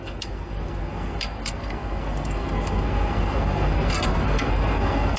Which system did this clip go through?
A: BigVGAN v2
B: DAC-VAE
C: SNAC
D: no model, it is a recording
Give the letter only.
C